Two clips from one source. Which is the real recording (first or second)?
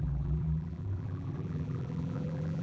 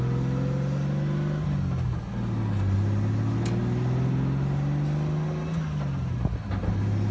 second